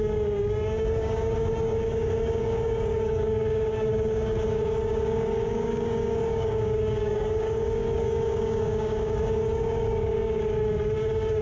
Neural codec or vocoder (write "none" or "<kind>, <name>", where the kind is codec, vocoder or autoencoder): codec, DAC